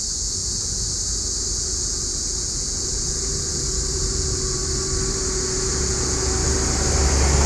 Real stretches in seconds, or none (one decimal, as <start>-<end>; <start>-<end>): 4.6-5.2; 6.4-7.5